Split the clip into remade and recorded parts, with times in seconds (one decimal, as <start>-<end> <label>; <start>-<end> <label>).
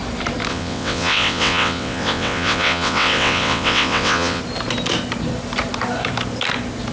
0.0-0.5 recorded; 0.5-4.4 remade; 4.4-6.9 recorded